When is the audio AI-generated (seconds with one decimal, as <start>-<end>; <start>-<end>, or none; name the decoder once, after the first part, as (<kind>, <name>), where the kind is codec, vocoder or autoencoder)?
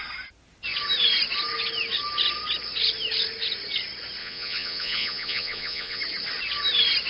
4.2-6.0 (vocoder, Vocos)